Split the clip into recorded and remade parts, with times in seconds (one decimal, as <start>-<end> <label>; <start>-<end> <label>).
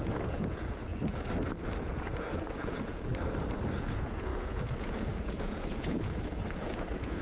0.0-0.9 remade; 0.9-1.8 recorded; 1.8-3.1 remade; 3.1-3.8 recorded; 3.8-7.2 remade